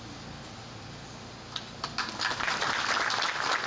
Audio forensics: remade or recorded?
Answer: recorded